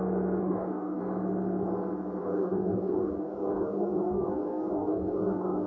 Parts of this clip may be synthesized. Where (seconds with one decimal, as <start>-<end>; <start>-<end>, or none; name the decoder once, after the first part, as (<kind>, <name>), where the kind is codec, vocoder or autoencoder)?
0.4-1.0 (codec, DAC); 2.2-5.7